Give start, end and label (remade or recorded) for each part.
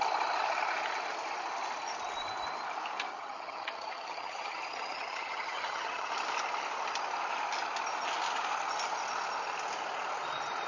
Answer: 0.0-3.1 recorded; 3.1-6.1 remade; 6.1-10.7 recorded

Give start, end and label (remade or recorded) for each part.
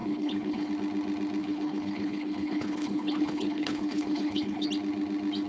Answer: 0.0-0.7 remade; 0.7-1.4 recorded; 1.4-4.7 remade; 4.7-5.5 recorded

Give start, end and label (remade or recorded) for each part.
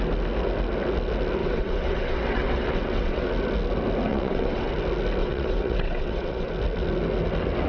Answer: 0.0-1.4 recorded; 1.4-3.3 remade; 3.3-4.1 recorded; 4.1-4.7 remade; 4.7-5.2 recorded; 5.2-6.5 remade; 6.5-7.7 recorded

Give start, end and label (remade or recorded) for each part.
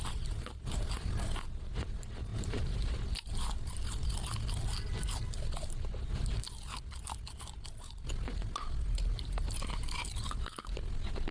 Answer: 0.0-2.3 recorded; 2.3-2.9 remade; 2.9-11.3 recorded